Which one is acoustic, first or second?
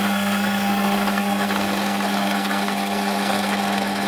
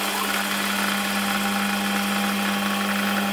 second